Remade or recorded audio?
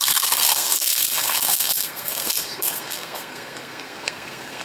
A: remade